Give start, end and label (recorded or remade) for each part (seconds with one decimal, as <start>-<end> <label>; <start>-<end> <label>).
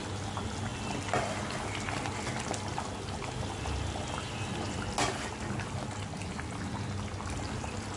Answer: 0.0-8.0 recorded